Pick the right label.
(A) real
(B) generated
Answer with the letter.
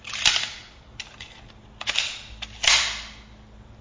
A